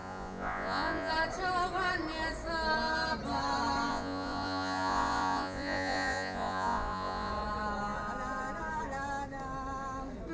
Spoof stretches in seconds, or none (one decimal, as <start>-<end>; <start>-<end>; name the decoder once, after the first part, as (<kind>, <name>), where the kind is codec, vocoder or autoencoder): 0.0-1.1 (vocoder, Vocos); 3.9-7.3